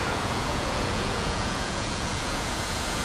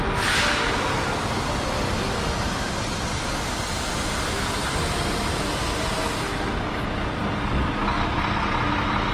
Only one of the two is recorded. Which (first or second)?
second